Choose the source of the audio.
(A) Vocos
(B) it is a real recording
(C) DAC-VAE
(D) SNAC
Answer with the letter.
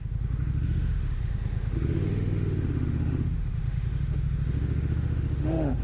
C